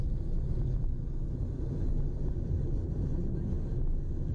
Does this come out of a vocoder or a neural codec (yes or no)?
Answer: no